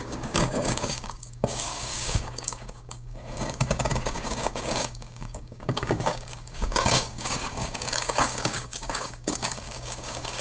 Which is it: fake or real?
fake